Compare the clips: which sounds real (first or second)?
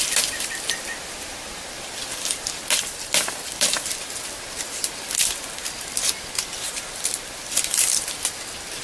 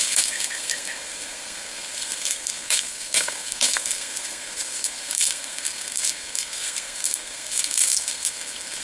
first